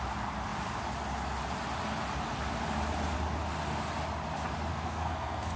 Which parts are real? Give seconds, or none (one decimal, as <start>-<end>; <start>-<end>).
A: 0.0-4.7